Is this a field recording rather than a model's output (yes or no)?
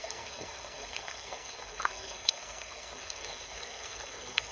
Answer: no